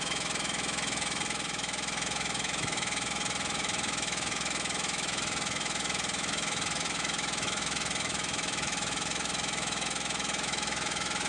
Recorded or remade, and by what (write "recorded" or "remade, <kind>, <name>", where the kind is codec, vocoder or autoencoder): remade, autoencoder, DAC-VAE